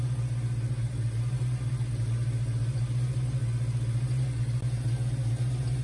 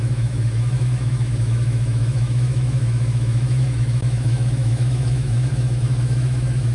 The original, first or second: first